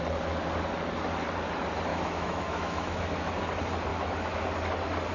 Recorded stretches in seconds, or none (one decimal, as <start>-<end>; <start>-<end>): 0.0-1.9; 3.4-3.9; 4.4-5.1